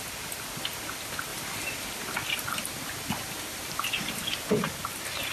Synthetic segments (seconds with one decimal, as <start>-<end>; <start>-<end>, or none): none